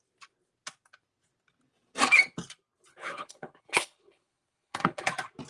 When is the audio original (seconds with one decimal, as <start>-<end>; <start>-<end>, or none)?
0.0-2.9; 5.1-5.5